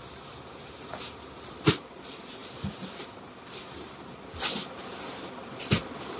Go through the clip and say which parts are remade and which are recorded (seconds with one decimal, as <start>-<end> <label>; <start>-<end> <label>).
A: 0.0-6.2 recorded